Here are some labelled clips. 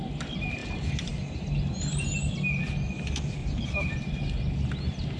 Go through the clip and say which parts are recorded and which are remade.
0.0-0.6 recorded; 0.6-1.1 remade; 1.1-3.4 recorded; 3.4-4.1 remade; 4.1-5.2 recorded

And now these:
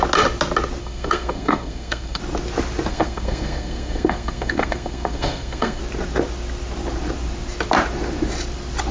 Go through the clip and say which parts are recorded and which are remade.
0.0-0.8 recorded; 0.8-2.2 remade; 2.2-2.9 recorded; 2.9-5.8 remade; 5.8-8.9 recorded

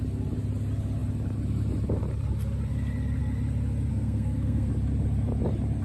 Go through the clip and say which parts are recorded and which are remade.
0.0-3.9 recorded; 3.9-4.7 remade; 4.7-5.8 recorded

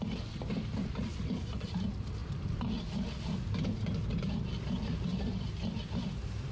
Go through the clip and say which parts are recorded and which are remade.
0.0-6.5 recorded

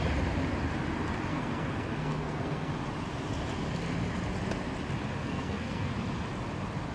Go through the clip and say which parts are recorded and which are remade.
0.0-1.3 recorded; 1.3-2.7 remade; 2.7-5.2 recorded; 5.2-5.9 remade; 5.9-6.9 recorded

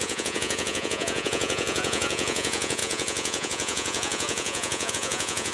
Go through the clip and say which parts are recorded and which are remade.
0.0-5.5 remade